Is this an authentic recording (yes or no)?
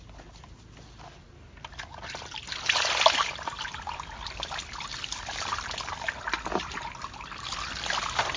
yes